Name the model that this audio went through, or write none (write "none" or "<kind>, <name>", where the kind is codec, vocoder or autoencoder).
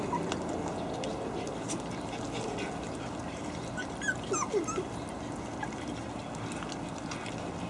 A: none